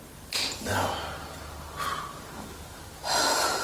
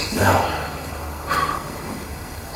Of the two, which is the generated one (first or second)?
second